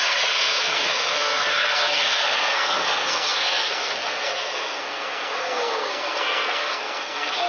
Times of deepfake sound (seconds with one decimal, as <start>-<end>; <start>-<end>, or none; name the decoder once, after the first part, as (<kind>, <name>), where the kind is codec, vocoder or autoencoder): 0.0-7.5 (codec, SNAC)